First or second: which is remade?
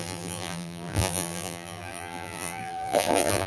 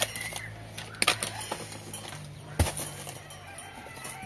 first